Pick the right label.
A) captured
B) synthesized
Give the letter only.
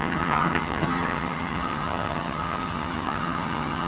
B